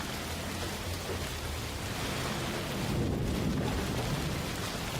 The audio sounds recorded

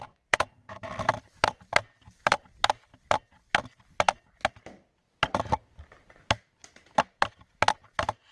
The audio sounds remade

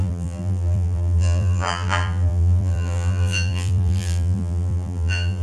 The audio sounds remade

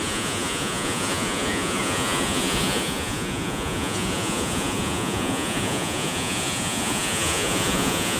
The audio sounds remade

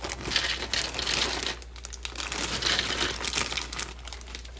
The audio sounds recorded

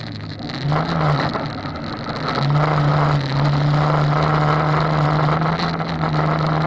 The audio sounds recorded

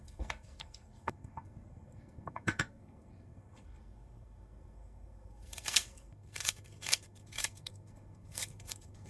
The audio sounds remade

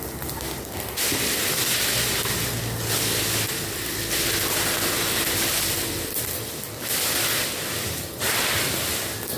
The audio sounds recorded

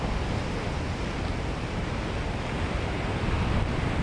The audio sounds recorded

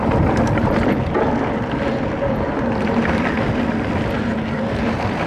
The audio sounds recorded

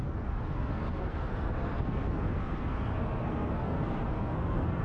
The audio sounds remade